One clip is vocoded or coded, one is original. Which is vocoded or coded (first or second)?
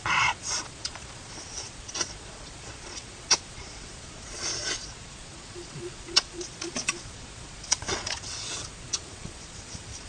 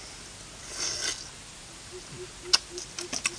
first